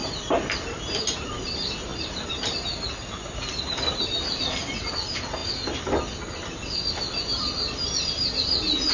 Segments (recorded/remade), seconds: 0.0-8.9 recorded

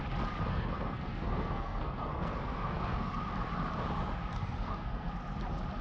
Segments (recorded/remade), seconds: 0.0-0.5 recorded; 0.5-3.2 remade; 3.2-4.3 recorded; 4.3-5.1 remade; 5.1-5.8 recorded

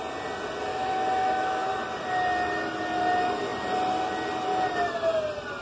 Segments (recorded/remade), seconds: 0.0-0.7 recorded; 0.7-1.8 remade; 1.8-5.6 recorded

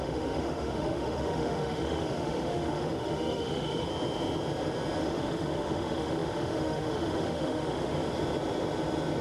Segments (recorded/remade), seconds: 0.0-3.9 remade; 3.9-5.0 recorded; 5.0-8.1 remade; 8.1-9.2 recorded